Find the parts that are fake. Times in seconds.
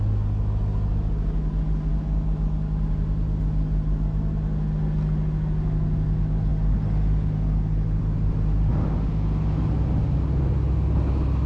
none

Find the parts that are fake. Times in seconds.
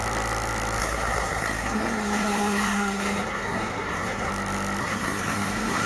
0.8-4.3 (codec, SNAC); 4.8-5.9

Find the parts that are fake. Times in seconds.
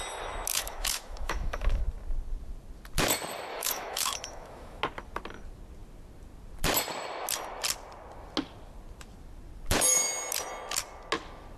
0.5-1.8 (autoencoder, DAC-VAE); 3.5-4.8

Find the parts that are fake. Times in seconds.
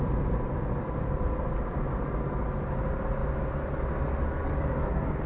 4.4-5.3 (codec, DAC)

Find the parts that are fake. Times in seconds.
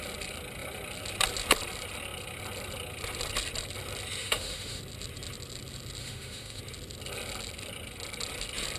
4.2-4.8 (autoencoder, DAC-VAE); 6.0-6.6